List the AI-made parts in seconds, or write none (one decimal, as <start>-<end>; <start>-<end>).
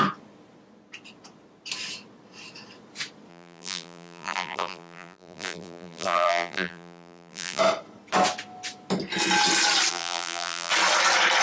3.3-7.6; 9.9-10.7